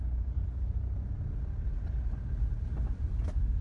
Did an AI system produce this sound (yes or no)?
no